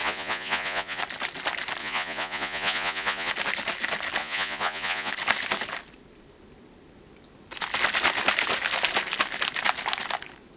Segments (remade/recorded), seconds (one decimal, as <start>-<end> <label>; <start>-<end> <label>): 0.0-1.0 remade; 1.0-1.8 recorded; 1.8-3.3 remade; 3.3-4.2 recorded; 4.2-5.1 remade; 5.1-10.6 recorded